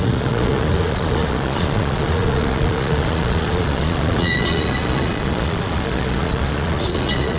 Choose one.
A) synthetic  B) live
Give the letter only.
A